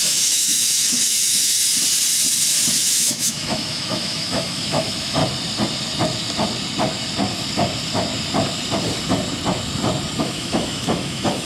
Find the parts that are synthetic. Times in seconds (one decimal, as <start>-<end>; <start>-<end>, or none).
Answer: 0.0-1.6; 2.7-5.2; 10.2-11.4